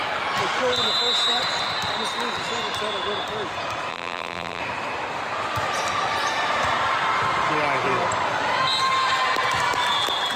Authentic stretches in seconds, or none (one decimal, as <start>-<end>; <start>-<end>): 0.0-3.9; 4.6-10.4